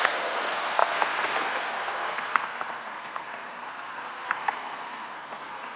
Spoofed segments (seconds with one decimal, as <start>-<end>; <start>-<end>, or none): 0.0-5.8